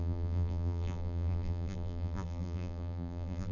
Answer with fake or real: fake